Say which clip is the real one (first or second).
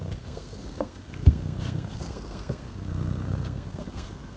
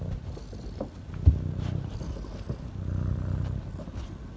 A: second